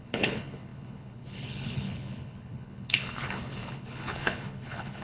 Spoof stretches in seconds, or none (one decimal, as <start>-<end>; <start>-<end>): 0.0-5.0